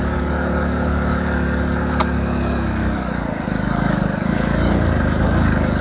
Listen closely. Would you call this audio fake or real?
fake